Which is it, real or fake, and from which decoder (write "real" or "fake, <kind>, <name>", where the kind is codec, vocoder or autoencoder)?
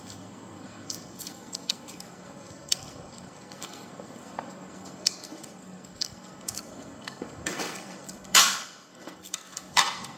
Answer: fake, codec, SNAC